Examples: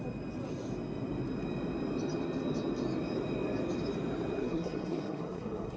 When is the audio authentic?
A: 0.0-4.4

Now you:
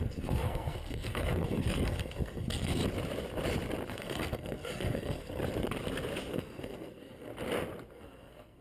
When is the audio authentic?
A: 2.8-3.9; 5.4-6.3; 7.3-7.9

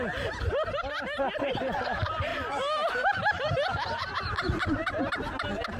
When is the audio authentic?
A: 0.0-2.3; 4.1-5.8